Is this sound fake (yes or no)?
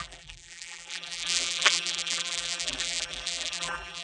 yes